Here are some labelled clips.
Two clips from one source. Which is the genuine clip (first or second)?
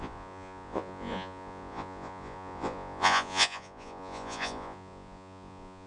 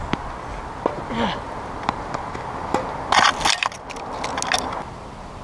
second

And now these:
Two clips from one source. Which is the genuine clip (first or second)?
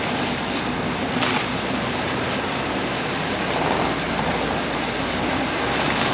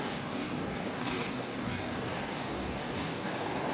first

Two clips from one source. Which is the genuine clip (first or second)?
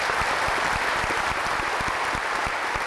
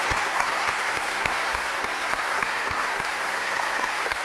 first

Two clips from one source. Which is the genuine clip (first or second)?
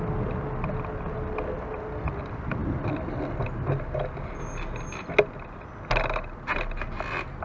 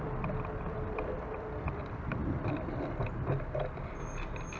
first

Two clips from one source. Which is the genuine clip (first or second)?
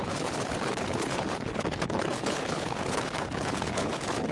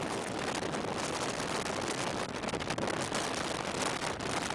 second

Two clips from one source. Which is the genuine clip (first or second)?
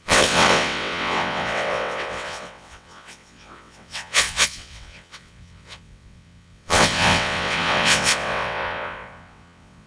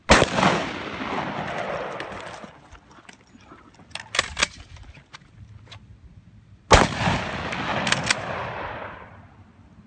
second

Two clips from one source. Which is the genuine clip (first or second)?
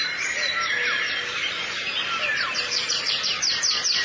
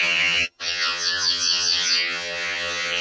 first